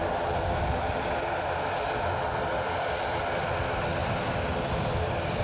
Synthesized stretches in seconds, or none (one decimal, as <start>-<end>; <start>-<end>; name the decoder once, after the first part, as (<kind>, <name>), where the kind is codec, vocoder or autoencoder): 0.0-3.2 (vocoder, BigVGAN v2); 4.0-5.4

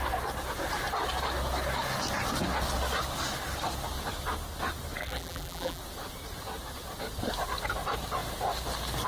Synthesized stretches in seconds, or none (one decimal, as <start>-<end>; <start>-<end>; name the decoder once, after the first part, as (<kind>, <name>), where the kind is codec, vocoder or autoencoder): 5.0-5.8 (vocoder, BigVGAN v2)

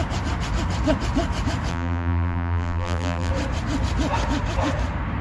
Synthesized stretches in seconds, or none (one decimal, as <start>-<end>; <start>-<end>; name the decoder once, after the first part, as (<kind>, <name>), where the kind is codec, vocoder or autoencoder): 1.7-3.3 (vocoder, BigVGAN v2)

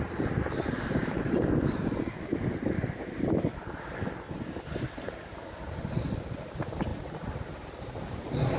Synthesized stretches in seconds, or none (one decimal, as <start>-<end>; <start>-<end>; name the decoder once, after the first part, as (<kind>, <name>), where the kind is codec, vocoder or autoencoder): 1.0-1.8 (vocoder, BigVGAN v2)

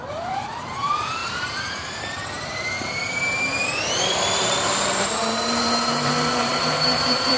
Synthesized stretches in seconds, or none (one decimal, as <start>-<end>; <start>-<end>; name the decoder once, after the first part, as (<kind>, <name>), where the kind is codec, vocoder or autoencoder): 0.0-7.4 (vocoder, BigVGAN v2)

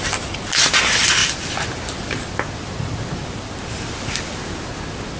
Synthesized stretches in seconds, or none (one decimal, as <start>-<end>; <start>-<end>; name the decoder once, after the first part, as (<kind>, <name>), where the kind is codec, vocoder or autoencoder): 1.2-4.3 (vocoder, BigVGAN v2)

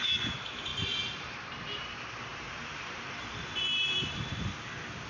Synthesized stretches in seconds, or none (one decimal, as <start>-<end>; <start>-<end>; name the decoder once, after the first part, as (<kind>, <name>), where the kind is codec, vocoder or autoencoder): 0.7-1.8 (vocoder, BigVGAN v2); 2.3-4.4